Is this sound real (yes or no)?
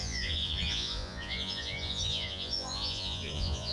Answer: no